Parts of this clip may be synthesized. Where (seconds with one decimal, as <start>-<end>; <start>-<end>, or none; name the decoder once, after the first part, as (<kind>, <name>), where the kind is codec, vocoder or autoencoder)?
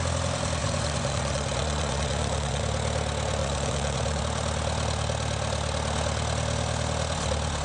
0.6-2.6 (vocoder, Vocos); 3.4-4.2